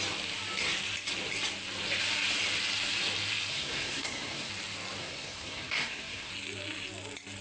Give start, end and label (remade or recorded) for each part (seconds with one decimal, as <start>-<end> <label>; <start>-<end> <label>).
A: 0.0-3.5 recorded; 3.5-4.5 remade; 4.5-5.0 recorded; 5.0-6.3 remade; 6.3-7.4 recorded